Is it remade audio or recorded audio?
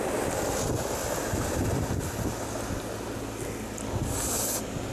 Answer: recorded